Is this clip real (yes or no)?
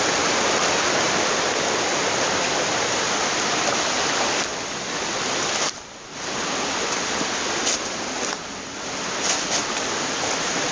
no